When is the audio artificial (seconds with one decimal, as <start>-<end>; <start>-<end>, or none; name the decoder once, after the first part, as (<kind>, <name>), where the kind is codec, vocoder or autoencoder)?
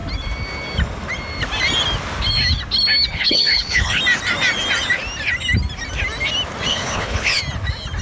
3.1-4.0 (codec, HILCodec); 6.7-7.4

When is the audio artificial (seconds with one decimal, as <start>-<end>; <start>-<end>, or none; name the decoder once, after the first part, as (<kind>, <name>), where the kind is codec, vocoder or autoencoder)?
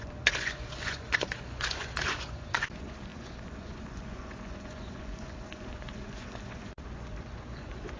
0.0-8.0 (vocoder, Vocos)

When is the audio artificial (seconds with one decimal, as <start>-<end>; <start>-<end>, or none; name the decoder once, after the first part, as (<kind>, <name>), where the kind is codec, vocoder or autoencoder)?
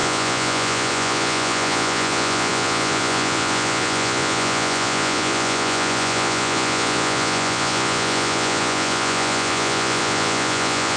0.0-11.0 (vocoder, Vocos)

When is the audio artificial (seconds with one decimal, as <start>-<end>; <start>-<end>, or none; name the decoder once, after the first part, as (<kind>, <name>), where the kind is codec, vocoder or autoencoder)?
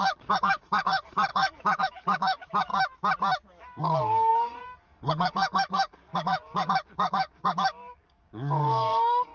0.0-2.7 (codec, DAC); 3.8-9.3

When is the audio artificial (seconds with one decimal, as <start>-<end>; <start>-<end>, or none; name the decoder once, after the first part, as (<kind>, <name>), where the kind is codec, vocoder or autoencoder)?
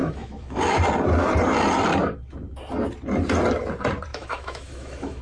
0.0-0.8 (autoencoder, DAC-VAE); 4.1-5.2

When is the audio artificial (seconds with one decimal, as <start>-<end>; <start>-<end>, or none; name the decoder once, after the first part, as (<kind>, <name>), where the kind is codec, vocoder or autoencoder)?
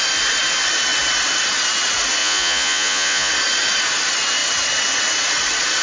2.2-3.3 (vocoder, Vocos)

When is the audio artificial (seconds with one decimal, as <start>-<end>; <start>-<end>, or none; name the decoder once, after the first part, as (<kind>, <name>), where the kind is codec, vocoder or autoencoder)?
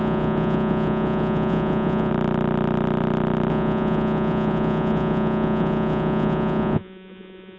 0.0-2.1 (vocoder, Vocos); 3.5-7.6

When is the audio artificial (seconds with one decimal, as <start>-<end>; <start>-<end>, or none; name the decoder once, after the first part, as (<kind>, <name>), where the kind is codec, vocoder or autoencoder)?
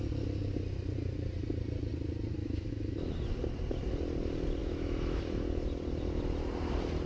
2.4-3.1 (autoencoder, DAC-VAE); 4.6-5.2